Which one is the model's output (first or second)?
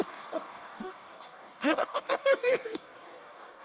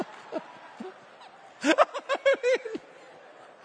first